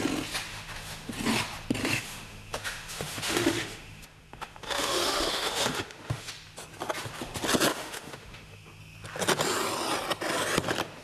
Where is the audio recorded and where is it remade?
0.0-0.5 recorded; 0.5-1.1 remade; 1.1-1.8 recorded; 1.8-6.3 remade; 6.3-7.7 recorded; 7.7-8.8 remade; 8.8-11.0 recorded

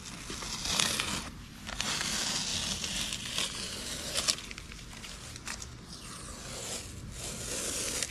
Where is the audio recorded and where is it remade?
0.0-8.1 recorded